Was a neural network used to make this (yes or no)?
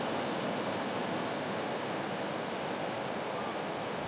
no